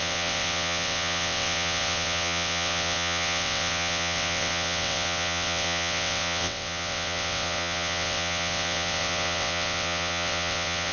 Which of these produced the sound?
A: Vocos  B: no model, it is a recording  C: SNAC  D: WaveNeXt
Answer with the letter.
D